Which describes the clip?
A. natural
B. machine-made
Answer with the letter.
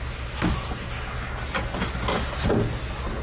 A